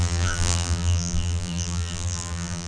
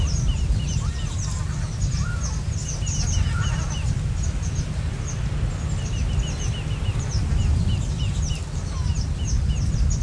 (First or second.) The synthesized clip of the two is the first